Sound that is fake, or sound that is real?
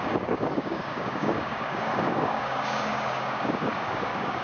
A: fake